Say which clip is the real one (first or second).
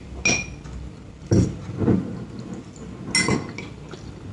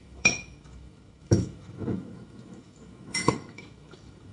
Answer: first